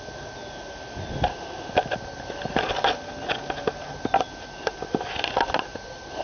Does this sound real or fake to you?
real